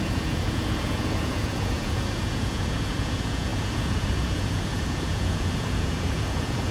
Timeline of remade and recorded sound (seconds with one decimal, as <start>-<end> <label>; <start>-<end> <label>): 0.0-6.7 remade